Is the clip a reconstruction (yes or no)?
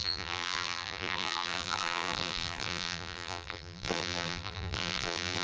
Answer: yes